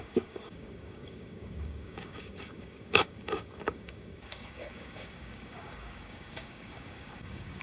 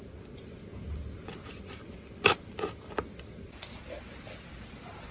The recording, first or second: second